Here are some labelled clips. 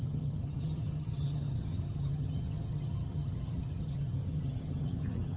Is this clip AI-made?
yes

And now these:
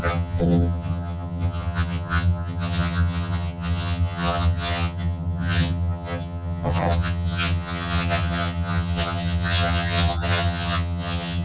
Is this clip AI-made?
yes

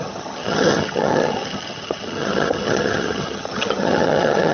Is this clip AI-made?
yes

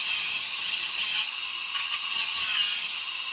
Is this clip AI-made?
yes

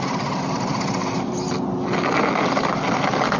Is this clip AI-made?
no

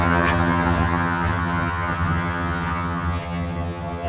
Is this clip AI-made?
yes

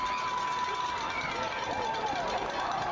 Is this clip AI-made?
no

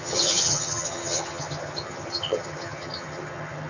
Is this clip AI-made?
yes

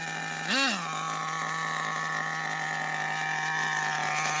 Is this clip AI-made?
no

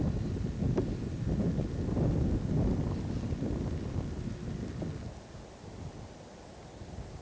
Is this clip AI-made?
no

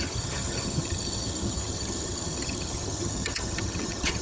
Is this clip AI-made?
yes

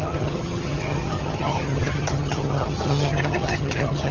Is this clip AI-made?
yes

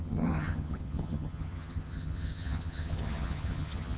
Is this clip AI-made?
yes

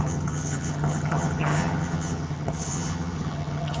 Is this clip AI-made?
yes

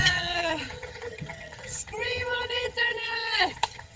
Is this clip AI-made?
yes